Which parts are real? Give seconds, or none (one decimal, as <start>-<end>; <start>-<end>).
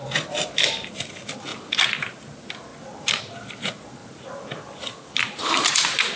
0.0-2.7; 3.6-4.0; 5.4-6.2